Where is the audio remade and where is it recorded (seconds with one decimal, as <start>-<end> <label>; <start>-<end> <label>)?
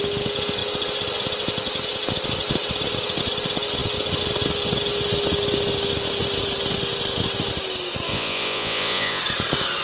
0.0-8.1 recorded; 8.1-9.2 remade; 9.2-9.8 recorded